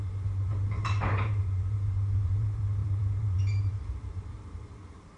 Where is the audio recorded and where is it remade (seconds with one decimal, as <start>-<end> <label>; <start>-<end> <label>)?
0.0-5.2 remade